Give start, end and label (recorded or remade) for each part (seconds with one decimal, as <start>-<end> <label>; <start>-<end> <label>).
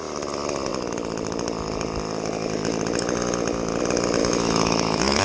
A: 0.0-4.2 recorded; 4.2-5.2 remade